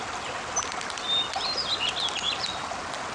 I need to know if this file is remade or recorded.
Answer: recorded